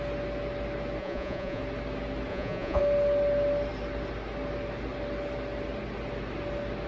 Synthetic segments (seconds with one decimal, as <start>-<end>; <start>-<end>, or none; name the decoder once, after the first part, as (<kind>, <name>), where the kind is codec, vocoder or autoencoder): 1.0-1.6 (vocoder, Vocos); 2.3-2.8